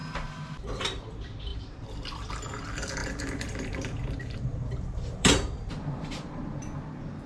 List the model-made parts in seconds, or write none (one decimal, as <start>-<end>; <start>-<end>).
1.5-2.3; 3.0-6.6